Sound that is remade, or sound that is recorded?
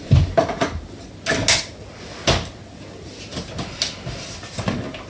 recorded